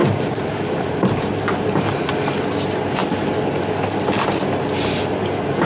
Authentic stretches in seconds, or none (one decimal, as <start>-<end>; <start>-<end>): 2.1-3.0; 3.7-5.7